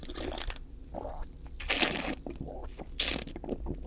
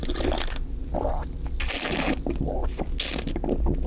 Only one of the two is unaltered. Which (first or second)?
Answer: second